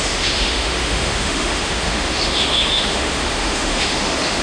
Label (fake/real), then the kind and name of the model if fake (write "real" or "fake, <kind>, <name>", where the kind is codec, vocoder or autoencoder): fake, autoencoder, DAC-VAE